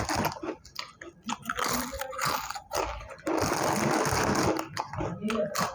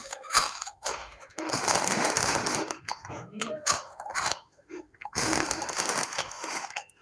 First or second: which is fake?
second